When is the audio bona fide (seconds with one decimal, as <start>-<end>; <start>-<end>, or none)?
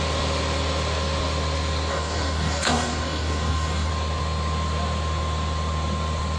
0.0-1.9; 3.9-6.4